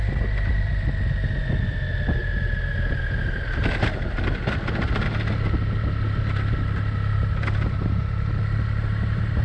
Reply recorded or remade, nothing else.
recorded